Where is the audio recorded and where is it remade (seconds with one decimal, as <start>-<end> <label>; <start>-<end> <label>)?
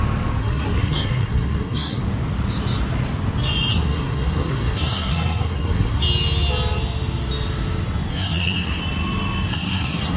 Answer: 0.0-0.4 recorded; 0.4-2.0 remade; 2.0-3.7 recorded; 3.7-6.0 remade; 6.0-8.1 recorded; 8.1-8.8 remade; 8.8-9.5 recorded; 9.5-10.2 remade